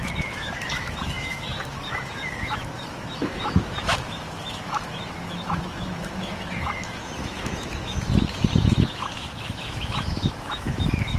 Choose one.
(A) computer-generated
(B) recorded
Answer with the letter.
A